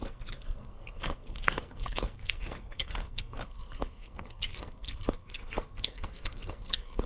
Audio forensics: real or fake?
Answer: fake